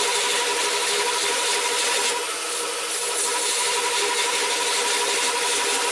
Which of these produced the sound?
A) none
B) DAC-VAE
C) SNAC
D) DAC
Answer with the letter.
A